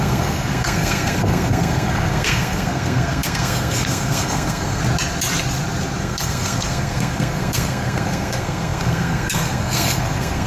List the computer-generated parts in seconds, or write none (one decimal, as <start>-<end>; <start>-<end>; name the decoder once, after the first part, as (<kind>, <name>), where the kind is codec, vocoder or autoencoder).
0.0-4.8 (codec, SNAC); 6.0-10.5